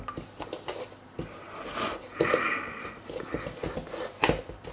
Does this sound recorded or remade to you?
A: recorded